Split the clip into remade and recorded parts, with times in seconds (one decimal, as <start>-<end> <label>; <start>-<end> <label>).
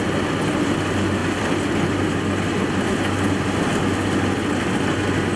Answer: 0.0-5.4 recorded